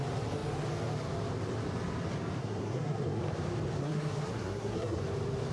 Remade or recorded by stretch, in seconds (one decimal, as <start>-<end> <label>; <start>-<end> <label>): 0.0-2.4 recorded; 2.4-3.2 remade; 3.2-3.8 recorded; 3.8-5.0 remade; 5.0-5.5 recorded